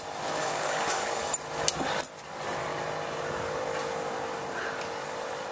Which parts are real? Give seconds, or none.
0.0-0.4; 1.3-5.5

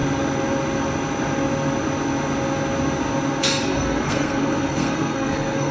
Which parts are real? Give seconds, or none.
0.0-3.4

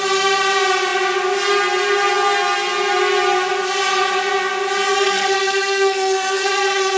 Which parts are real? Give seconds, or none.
0.0-4.9

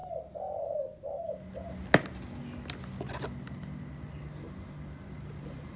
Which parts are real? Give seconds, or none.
0.0-5.8

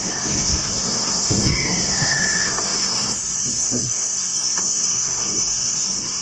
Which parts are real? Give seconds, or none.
none